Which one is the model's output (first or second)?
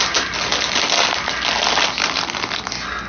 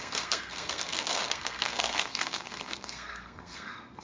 second